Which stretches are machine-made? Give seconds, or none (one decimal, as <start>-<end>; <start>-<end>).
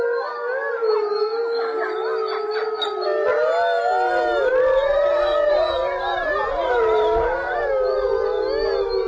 4.5-7.6